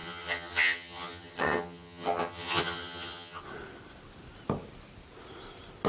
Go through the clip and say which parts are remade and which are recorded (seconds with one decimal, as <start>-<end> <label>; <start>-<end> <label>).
0.0-3.4 remade; 3.4-5.9 recorded